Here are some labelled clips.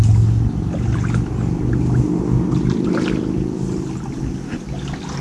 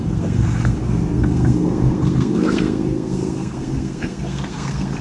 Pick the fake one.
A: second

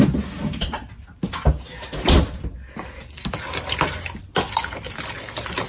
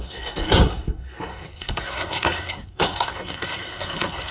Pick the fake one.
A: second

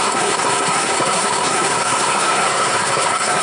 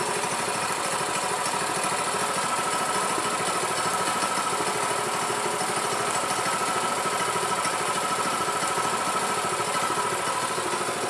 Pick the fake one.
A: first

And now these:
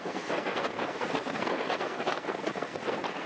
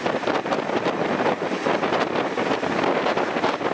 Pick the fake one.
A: first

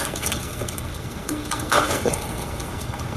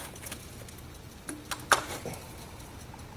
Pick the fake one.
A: first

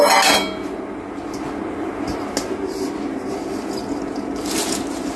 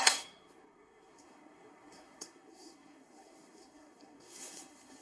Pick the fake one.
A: second